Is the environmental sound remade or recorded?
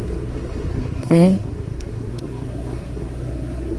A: remade